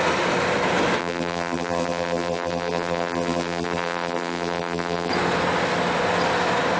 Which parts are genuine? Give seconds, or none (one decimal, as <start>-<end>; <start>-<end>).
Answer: 0.0-1.0; 5.1-6.8